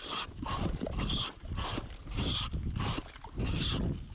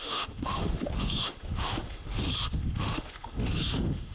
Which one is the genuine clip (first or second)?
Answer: first